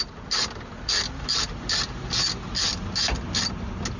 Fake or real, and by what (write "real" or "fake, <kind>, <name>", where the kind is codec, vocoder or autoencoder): real